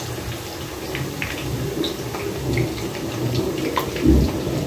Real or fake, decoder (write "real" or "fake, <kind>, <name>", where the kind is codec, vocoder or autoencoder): real